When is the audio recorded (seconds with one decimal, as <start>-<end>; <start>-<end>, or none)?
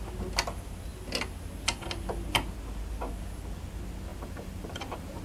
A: 0.0-4.1